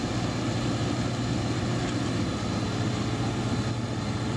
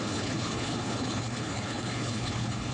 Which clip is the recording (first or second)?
first